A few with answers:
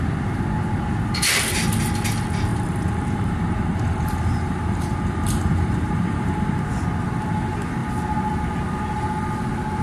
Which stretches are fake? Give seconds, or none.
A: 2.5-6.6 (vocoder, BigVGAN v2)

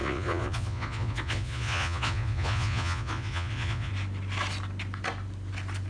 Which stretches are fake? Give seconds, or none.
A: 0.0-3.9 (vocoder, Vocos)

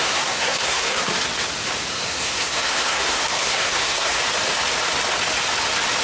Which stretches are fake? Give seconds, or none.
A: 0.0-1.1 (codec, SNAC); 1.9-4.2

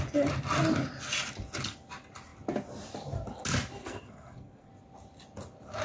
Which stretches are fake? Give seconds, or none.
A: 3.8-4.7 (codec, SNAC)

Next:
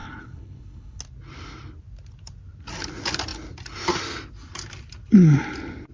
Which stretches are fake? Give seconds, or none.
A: 0.0-1.0 (codec, HILCodec)